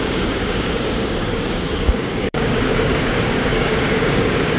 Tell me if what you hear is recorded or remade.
remade